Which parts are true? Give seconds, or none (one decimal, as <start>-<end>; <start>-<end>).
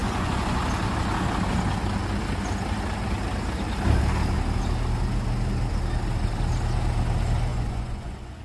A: 0.6-7.5